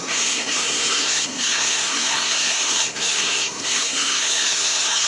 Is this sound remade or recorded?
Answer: remade